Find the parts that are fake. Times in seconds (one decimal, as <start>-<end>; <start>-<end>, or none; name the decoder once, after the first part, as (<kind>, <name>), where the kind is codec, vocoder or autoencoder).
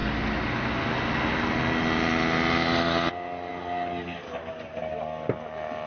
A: none